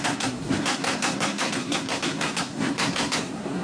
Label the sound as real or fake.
fake